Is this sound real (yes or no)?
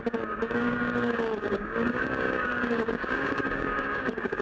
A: no